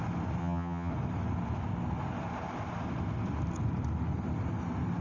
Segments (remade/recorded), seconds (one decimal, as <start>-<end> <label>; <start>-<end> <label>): 0.0-0.4 recorded; 0.4-0.9 remade; 0.9-5.0 recorded